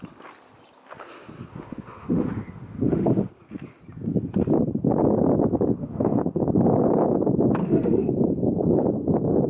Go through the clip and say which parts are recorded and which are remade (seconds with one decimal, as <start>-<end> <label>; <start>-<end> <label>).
0.0-1.5 recorded; 1.5-3.3 remade; 3.3-5.8 recorded; 5.8-6.4 remade; 6.4-7.6 recorded; 7.6-8.1 remade; 8.1-9.5 recorded